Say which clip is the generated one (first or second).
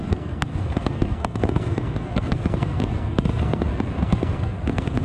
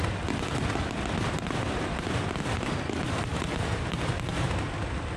first